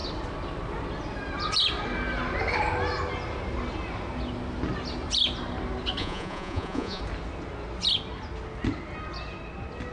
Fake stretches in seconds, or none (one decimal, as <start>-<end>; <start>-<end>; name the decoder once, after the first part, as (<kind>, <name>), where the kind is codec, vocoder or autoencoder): 6.0-7.0 (vocoder, Vocos)

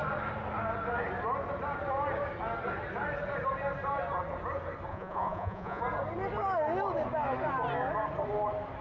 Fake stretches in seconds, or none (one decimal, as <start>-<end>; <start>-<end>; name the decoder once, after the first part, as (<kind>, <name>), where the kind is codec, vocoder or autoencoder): 4.9-5.8 (vocoder, Vocos)

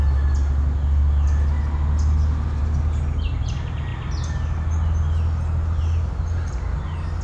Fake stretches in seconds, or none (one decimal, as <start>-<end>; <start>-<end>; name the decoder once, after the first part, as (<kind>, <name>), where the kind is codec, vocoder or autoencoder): none

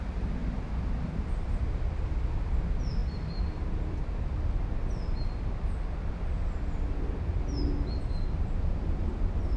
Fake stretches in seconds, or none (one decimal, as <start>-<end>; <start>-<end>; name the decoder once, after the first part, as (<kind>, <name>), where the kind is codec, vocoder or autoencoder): none

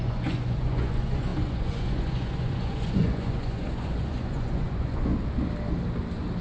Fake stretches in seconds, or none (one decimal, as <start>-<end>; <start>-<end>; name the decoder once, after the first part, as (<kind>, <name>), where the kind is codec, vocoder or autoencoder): 0.0-5.1 (vocoder, Vocos)

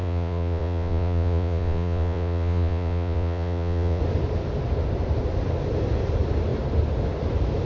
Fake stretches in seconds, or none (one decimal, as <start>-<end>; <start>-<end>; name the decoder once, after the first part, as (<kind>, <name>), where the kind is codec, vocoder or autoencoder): 0.0-4.0 (vocoder, Vocos)

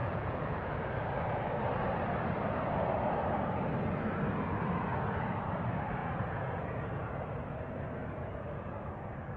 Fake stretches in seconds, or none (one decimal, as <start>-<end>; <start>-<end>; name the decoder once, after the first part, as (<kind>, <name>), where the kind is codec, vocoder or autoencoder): 0.0-0.9 (vocoder, Vocos); 6.0-7.2; 8.0-8.7

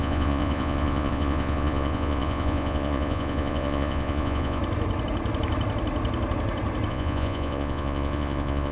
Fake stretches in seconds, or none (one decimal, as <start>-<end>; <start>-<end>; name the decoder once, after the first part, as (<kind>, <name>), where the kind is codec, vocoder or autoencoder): 0.0-4.6 (vocoder, Vocos); 6.9-8.7